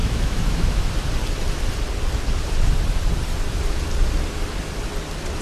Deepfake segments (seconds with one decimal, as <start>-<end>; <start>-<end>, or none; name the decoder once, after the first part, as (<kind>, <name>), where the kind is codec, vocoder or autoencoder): 0.0-0.9 (autoencoder, DAC-VAE)